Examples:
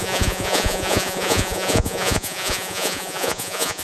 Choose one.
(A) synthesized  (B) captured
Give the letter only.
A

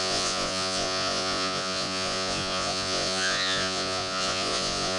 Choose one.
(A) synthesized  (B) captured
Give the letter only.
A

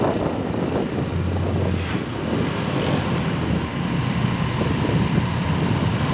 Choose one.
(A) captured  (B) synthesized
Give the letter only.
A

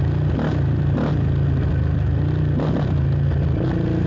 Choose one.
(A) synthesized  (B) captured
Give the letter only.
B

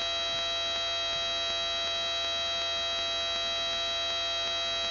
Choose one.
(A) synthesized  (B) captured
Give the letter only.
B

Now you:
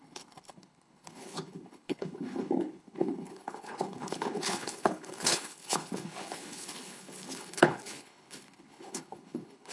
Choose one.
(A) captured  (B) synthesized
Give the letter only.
B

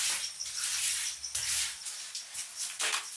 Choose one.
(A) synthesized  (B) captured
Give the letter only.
B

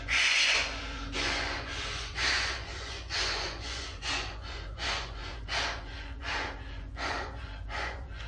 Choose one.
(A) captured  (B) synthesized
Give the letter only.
B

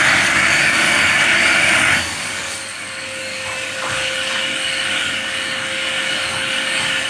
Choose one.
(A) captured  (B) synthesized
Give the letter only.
B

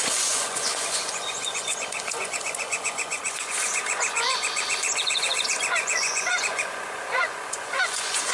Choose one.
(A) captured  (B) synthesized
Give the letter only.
B